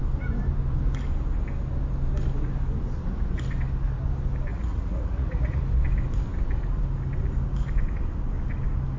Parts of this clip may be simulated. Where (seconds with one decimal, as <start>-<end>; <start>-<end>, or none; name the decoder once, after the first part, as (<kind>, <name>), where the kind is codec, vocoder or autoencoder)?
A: 4.5-5.6 (vocoder, Vocos)